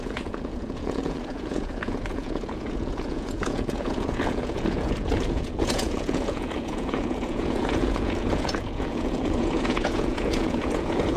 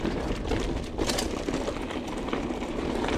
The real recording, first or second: second